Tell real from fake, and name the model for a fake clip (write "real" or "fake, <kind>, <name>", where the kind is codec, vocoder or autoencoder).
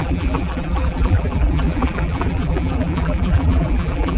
fake, vocoder, BigVGAN v2